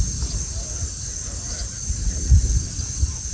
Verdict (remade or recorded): recorded